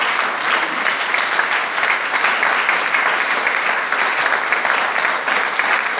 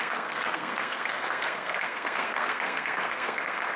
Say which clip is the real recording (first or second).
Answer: first